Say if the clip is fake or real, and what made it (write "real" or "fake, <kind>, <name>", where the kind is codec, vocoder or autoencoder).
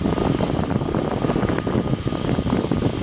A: real